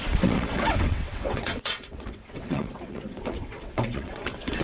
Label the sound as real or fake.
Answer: fake